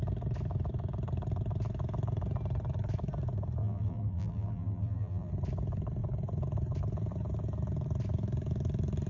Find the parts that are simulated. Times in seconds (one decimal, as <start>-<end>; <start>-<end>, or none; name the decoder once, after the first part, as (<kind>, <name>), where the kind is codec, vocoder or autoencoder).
3.6-5.3 (vocoder, BigVGAN v2)